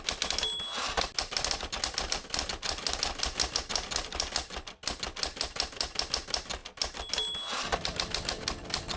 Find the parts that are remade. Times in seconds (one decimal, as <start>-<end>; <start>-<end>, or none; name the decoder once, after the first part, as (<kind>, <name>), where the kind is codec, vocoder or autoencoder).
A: none